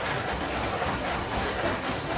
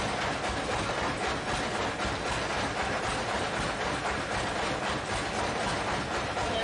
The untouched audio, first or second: second